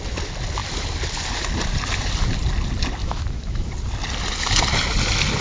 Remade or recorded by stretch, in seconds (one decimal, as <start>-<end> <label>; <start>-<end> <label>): 0.0-3.0 recorded; 3.0-3.7 remade; 3.7-5.4 recorded